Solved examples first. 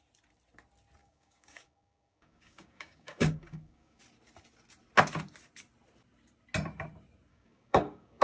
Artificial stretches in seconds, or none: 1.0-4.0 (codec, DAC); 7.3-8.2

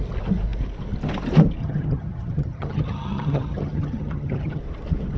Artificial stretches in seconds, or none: 1.6-4.6 (vocoder, HiFi-GAN)

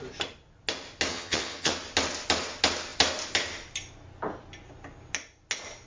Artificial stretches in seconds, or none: 1.1-1.7 (vocoder, HiFi-GAN)